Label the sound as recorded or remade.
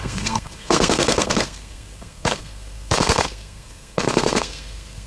remade